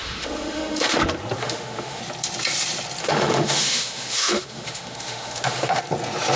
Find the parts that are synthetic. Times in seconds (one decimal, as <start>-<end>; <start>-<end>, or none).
0.0-1.0; 1.4-2.0; 3.0-5.8